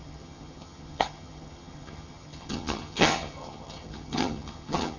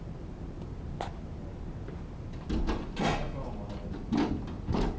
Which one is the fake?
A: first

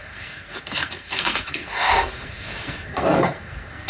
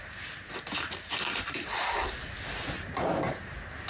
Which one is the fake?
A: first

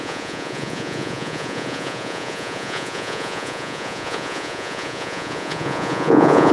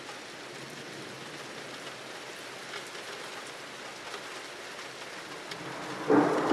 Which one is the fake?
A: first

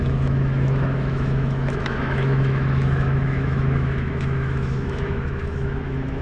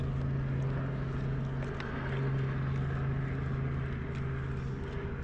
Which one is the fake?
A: first